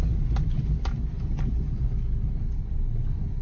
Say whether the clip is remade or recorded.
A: recorded